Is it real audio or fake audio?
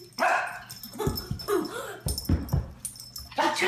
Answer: real